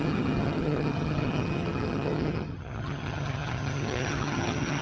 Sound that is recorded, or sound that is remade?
remade